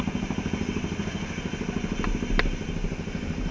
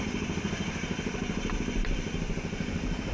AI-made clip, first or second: second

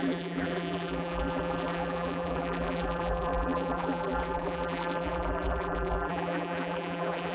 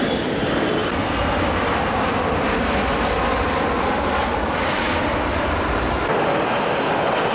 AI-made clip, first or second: first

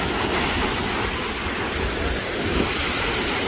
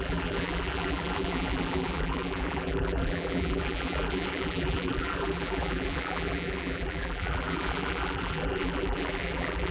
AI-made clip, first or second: second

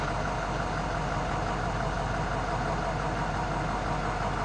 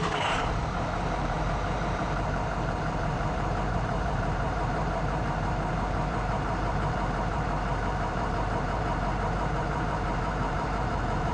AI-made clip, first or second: second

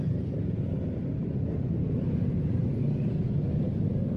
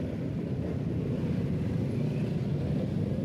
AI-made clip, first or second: second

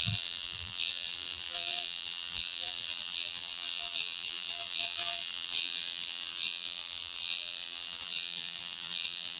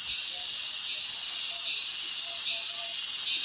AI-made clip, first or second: first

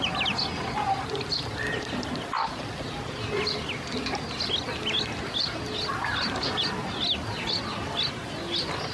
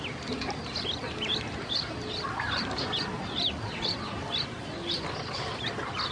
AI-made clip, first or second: second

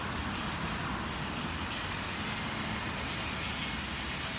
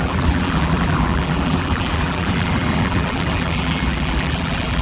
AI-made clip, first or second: second